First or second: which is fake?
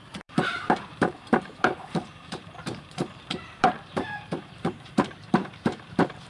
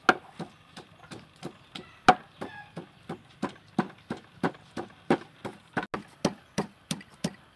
first